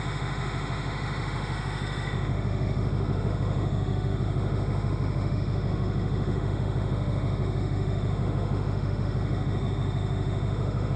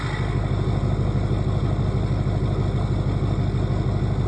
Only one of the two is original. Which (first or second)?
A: second